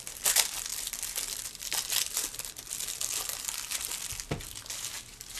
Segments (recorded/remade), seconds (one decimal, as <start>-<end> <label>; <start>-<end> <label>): 0.0-0.7 recorded; 0.7-3.9 remade; 3.9-5.4 recorded

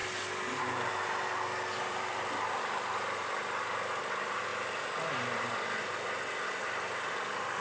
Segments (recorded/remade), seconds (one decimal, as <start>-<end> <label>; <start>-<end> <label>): 0.0-0.9 recorded; 0.9-4.5 remade; 4.5-5.1 recorded; 5.1-7.6 remade

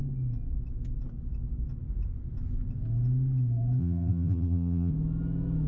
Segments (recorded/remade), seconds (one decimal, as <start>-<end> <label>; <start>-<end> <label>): 0.0-3.8 recorded; 3.8-4.9 remade; 4.9-5.7 recorded